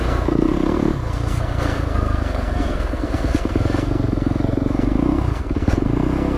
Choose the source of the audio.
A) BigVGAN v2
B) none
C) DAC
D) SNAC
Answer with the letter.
D